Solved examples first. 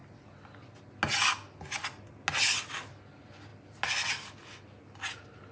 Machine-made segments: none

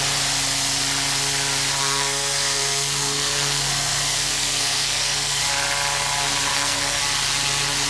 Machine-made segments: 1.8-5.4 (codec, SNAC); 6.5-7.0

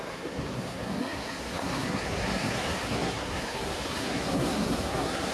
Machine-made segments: 0.0-5.3 (codec, SNAC)

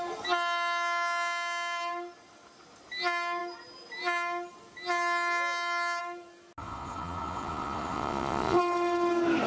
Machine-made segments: 6.6-8.6 (vocoder, Vocos)

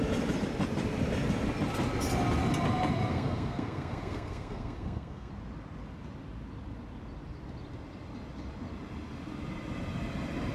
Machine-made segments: 3.1-5.3 (codec, SNAC)